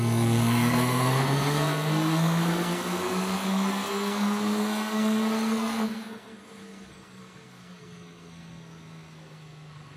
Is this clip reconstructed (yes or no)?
yes